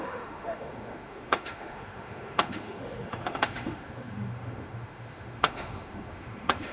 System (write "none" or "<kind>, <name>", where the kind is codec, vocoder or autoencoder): autoencoder, DAC-VAE